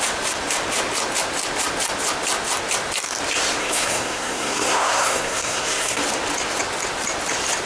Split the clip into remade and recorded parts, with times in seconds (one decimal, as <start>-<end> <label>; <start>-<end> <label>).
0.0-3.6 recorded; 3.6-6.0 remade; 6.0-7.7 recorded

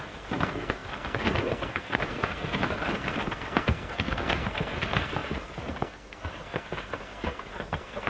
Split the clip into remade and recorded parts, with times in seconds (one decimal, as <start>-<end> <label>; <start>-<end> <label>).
0.0-8.1 remade

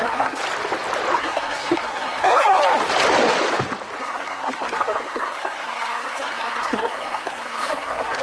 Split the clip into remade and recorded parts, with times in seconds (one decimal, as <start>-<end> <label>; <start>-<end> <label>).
0.0-0.4 remade; 0.4-1.2 recorded; 1.2-2.6 remade; 2.6-4.0 recorded; 4.0-8.2 remade

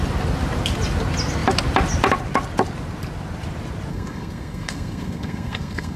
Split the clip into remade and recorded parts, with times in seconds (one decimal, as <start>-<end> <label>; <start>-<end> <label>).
0.0-3.9 recorded; 3.9-6.0 remade

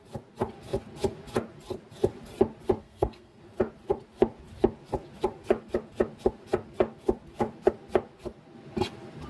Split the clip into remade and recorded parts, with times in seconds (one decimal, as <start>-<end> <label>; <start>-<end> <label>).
0.0-2.8 recorded; 2.8-3.4 remade; 3.4-9.3 recorded